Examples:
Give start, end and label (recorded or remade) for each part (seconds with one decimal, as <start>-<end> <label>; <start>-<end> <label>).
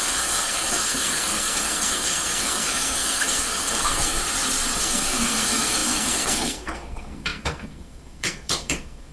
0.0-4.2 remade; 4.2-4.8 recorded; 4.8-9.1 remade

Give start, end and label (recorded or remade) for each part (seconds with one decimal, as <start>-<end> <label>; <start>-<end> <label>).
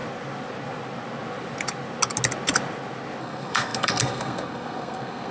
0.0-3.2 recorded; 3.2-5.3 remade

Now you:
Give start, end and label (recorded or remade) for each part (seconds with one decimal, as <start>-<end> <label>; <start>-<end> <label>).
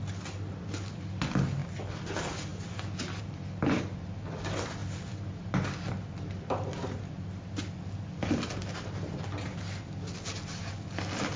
0.0-11.4 recorded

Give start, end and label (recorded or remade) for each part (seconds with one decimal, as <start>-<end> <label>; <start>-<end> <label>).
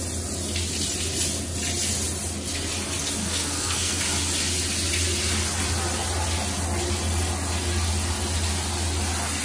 0.0-3.2 recorded; 3.2-4.0 remade; 4.0-9.4 recorded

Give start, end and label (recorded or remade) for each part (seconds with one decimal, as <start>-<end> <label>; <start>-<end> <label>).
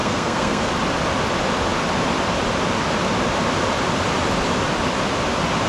0.0-0.7 remade; 0.7-5.7 recorded